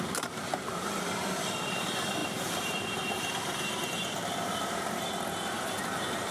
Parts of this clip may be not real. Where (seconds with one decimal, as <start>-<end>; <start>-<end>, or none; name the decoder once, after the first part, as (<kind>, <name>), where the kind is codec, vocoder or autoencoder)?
0.0-6.3 (vocoder, BigVGAN v2)